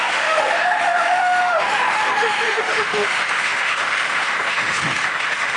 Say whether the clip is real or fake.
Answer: fake